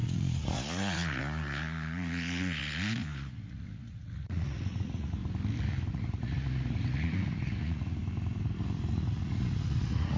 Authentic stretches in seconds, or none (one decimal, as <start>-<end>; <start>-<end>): 5.2-5.9; 8.0-8.9